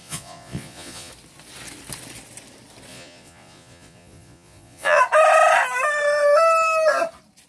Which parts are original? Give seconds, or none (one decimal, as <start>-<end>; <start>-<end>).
1.1-2.9; 5.0-7.5